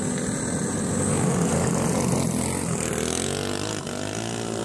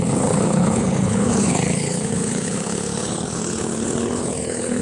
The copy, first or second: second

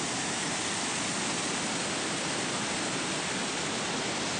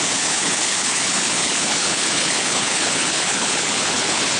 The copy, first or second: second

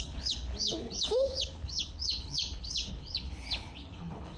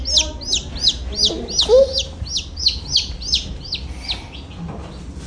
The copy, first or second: first